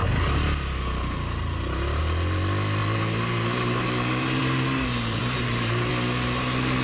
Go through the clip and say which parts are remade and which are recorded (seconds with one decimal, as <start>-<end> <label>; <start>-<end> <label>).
0.0-2.8 recorded; 2.8-4.4 remade; 4.4-5.2 recorded; 5.2-5.9 remade; 5.9-6.8 recorded